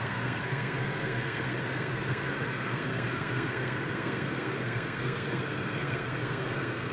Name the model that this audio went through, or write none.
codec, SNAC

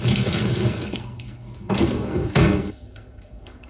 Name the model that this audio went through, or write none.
codec, SNAC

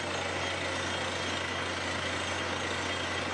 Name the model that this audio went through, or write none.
none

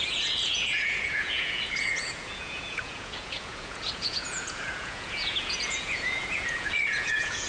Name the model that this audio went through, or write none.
vocoder, Vocos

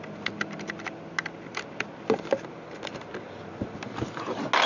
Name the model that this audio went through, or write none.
none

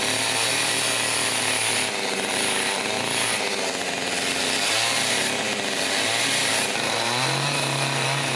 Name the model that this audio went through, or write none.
none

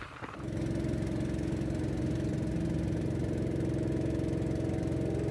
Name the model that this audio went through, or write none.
none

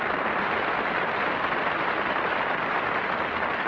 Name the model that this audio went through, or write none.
none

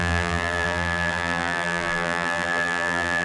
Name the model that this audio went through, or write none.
vocoder, BigVGAN v2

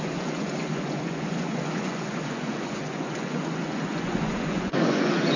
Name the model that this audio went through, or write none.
vocoder, Vocos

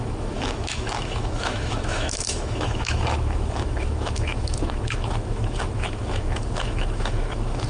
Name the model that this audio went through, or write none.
autoencoder, DAC-VAE